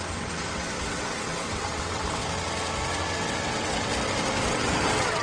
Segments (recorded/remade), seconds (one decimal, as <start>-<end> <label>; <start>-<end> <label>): 0.0-2.2 remade; 2.2-3.0 recorded; 3.0-3.9 remade; 3.9-4.4 recorded; 4.4-5.2 remade